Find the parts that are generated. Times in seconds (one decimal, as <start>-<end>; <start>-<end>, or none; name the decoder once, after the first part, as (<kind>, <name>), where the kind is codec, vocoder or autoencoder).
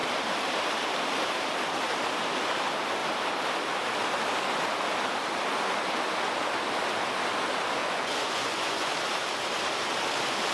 7.8-8.9 (vocoder, Vocos)